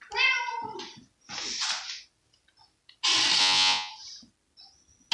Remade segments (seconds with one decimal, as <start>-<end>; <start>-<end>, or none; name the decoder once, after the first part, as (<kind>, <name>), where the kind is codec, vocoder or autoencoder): 3.4-3.9 (vocoder, Vocos)